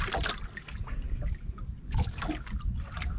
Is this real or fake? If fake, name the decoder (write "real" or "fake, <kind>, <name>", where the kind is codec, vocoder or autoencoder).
real